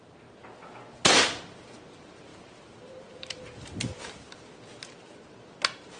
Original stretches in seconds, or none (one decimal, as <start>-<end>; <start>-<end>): 0.4-1.6